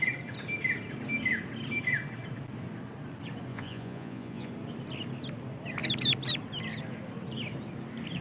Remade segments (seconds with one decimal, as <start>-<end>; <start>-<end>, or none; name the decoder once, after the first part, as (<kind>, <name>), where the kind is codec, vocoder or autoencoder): 3.5-4.5 (vocoder, Vocos)

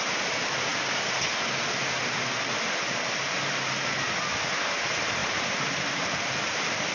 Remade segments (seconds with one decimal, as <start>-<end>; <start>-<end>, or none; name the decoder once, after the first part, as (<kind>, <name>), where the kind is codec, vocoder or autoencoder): 0.0-0.7 (vocoder, BigVGAN v2); 4.8-6.9

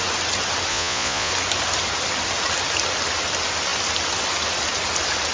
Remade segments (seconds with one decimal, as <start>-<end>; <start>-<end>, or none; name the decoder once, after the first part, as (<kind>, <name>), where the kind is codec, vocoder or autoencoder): 0.7-1.3 (vocoder, Vocos)

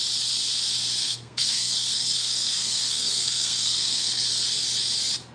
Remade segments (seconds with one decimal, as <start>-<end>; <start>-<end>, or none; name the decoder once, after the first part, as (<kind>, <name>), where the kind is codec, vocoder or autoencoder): 1.0-4.2 (codec, SNAC)

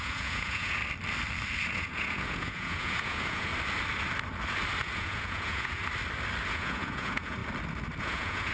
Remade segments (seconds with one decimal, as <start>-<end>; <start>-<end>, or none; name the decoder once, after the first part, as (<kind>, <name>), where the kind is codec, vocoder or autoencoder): 0.0-0.8 (vocoder, Vocos); 1.7-3.5; 4.8-5.8; 6.5-7.4; 8.0-8.5

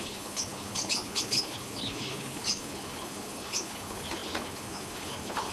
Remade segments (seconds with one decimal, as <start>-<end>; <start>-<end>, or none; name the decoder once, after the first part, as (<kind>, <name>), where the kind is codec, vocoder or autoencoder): 0.0-5.5 (codec, HILCodec)

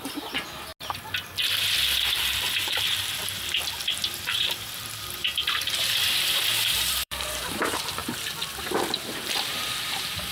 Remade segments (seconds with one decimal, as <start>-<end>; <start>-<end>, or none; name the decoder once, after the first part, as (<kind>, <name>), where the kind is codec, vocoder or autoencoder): 0.0-0.7 (vocoder, BigVGAN v2); 2.0-10.3

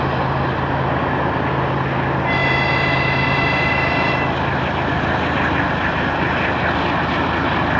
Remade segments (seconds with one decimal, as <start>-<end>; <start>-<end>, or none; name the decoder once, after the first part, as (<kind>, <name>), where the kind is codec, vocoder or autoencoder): none